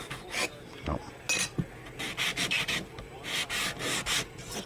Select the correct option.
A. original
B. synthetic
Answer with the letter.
A